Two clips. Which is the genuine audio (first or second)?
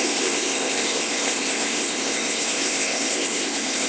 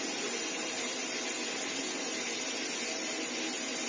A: second